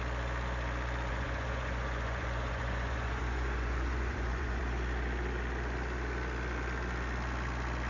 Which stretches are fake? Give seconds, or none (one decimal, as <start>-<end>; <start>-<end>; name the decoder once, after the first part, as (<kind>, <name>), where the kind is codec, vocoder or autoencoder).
1.1-4.6 (vocoder, Vocos)